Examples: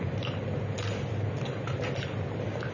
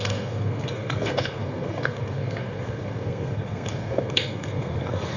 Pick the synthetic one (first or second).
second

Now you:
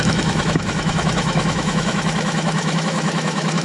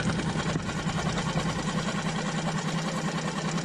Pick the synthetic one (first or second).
first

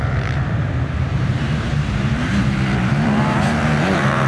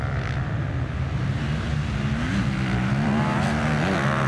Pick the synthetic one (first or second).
first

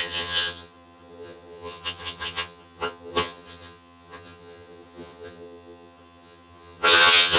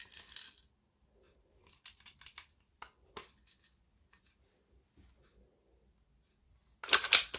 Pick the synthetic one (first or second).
first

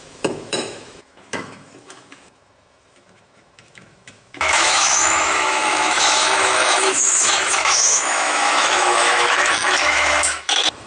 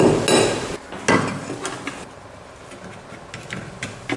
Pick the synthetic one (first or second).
first